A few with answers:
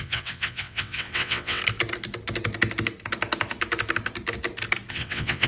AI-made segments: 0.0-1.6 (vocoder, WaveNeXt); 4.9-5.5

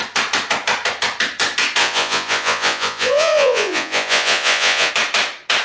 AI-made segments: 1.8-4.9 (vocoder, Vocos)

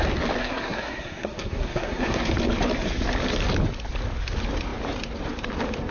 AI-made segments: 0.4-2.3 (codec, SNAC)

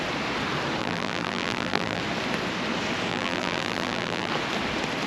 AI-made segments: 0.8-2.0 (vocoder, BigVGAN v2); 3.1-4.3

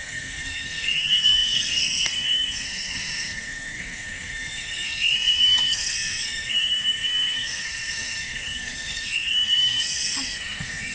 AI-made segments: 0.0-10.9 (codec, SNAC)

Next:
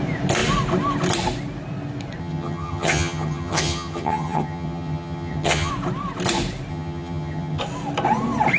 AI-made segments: 2.2-5.7 (vocoder, HiFi-GAN); 6.7-7.6

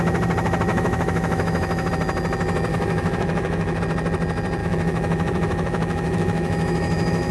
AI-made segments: 0.7-1.9 (autoencoder, DAC-VAE); 2.7-3.8; 4.6-7.3